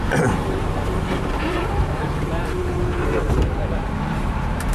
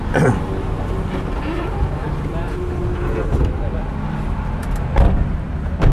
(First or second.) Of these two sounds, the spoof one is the first